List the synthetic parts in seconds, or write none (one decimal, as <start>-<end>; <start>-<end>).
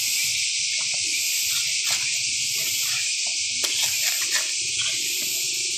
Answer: 2.7-3.5